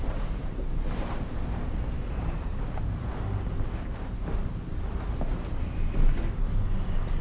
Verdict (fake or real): real